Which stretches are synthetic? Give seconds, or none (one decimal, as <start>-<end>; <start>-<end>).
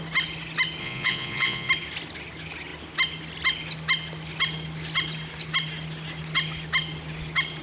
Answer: 0.8-1.7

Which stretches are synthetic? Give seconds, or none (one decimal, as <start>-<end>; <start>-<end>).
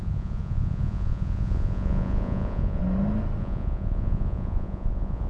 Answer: 0.0-2.8; 3.4-5.3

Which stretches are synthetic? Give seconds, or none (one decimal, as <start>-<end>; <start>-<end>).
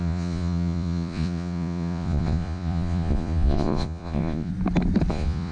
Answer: 0.0-4.5; 5.1-5.5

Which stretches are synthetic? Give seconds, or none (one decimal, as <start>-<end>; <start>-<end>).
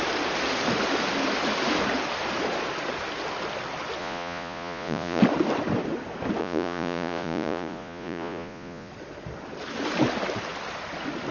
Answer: 4.0-5.2; 6.4-8.9